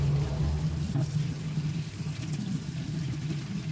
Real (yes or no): yes